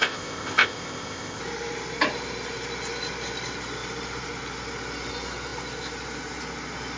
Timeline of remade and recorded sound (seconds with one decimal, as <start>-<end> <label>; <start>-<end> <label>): 0.0-1.4 remade; 1.4-7.0 recorded